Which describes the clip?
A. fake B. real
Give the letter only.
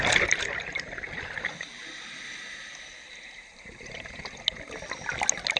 B